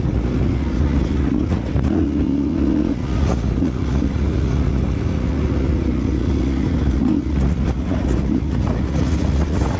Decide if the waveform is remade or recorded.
remade